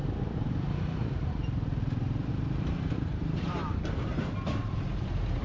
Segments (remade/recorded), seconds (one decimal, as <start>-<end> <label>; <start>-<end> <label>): 0.0-5.4 remade